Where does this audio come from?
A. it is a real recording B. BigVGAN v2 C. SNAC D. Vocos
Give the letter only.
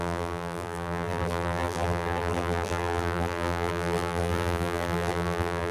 B